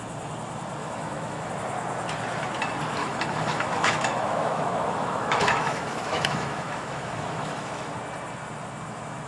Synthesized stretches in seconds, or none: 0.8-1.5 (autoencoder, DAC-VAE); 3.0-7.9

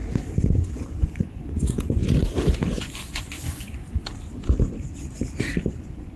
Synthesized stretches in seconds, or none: 0.0-2.0 (vocoder, Vocos); 2.7-3.8; 5.7-6.2

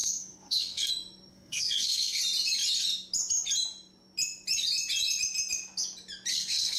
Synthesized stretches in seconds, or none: 0.0-0.9 (codec, SNAC); 1.3-2.2; 6.3-6.8

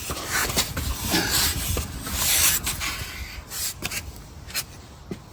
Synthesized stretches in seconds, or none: 0.0-0.4 (vocoder, BigVGAN v2); 3.6-5.3

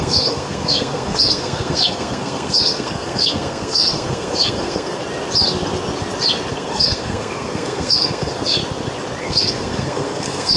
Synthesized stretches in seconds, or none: 0.0-5.0 (codec, SNAC); 6.5-8.6; 9.2-10.6

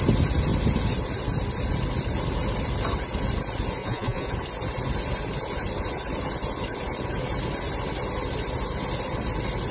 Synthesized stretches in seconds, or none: 3.8-4.3 (vocoder, Vocos)

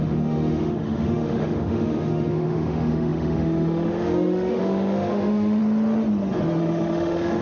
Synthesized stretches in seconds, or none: 0.0-5.6 (autoencoder, DAC-VAE); 6.6-7.4

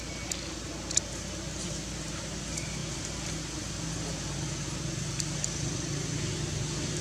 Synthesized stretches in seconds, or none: none